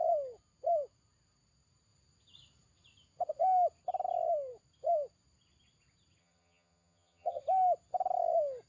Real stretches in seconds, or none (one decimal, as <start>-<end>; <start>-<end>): 0.0-6.2; 7.4-8.7